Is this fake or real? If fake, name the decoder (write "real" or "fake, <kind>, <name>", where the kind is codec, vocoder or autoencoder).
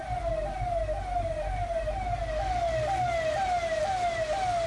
real